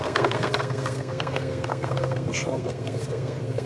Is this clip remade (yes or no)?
yes